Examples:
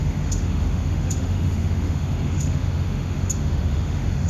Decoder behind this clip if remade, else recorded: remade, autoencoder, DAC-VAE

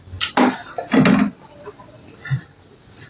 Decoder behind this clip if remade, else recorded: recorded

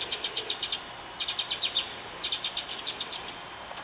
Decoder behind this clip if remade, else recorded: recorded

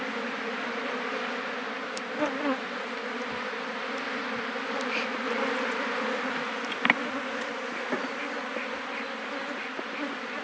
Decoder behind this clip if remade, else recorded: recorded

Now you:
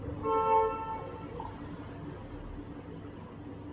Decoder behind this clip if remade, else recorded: recorded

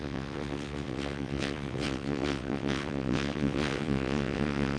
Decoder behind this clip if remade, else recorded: remade, vocoder, WaveNeXt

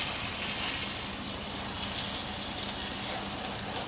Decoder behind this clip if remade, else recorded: recorded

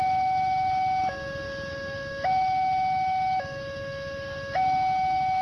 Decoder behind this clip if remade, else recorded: remade, autoencoder, DAC-VAE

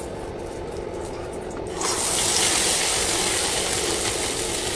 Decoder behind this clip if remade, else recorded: recorded